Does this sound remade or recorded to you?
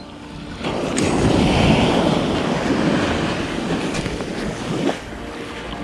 recorded